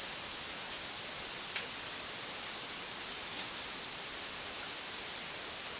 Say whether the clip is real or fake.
real